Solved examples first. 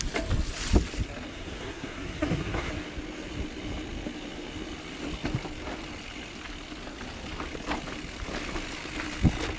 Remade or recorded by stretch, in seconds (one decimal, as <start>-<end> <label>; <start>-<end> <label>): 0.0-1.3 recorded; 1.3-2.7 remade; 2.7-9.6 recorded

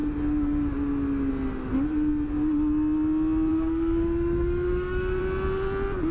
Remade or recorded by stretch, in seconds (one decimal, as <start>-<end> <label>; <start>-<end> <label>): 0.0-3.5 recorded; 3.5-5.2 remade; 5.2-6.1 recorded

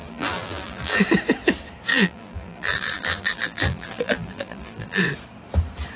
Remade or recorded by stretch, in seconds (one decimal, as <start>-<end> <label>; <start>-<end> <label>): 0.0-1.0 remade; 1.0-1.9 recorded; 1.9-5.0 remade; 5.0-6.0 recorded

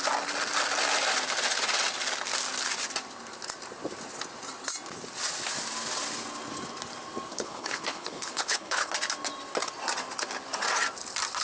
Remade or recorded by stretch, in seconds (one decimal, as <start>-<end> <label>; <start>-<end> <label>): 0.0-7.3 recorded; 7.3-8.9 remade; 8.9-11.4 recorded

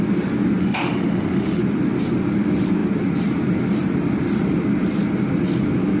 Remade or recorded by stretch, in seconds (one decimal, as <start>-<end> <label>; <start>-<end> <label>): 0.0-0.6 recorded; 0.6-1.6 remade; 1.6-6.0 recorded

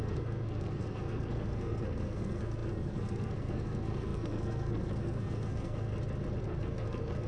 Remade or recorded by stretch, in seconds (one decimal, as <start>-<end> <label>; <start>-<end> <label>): 0.0-5.9 remade; 5.9-6.4 recorded; 6.4-7.3 remade

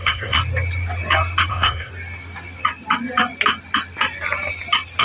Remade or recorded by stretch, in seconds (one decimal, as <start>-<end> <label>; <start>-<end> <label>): 0.0-0.4 remade; 0.4-1.5 recorded; 1.5-1.9 remade; 1.9-5.0 recorded